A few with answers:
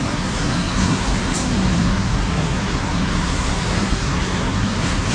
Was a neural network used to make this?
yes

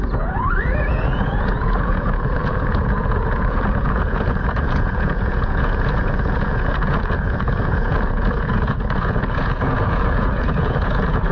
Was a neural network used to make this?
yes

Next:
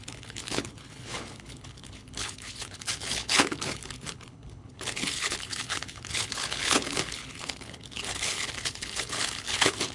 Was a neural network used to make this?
yes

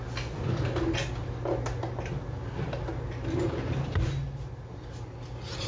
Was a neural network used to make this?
no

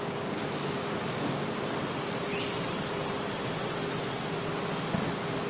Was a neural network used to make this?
no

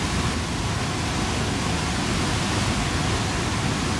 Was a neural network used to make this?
no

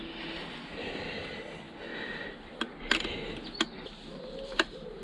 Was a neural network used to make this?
no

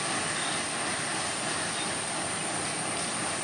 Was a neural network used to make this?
no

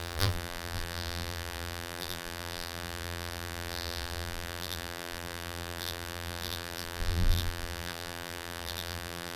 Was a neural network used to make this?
yes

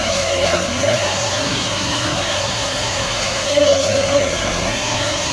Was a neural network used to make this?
yes